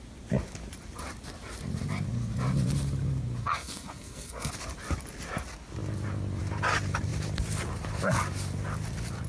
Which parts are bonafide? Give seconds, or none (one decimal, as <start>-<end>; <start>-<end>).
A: 0.0-3.4; 4.5-9.3